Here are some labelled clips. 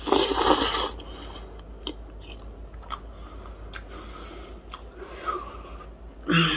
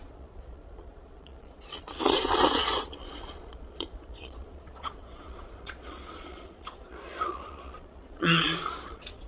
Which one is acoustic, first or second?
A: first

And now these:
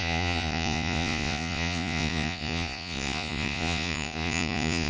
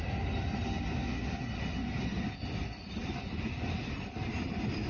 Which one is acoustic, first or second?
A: second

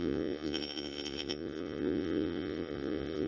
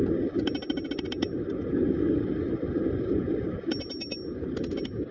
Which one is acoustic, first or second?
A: second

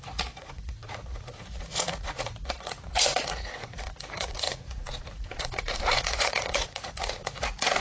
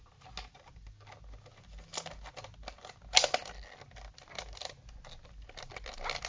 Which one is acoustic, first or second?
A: second